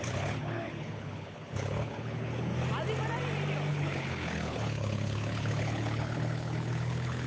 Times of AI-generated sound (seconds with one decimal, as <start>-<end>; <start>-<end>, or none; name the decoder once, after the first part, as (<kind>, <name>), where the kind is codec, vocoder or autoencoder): 0.0-2.5 (codec, HILCodec); 3.7-7.3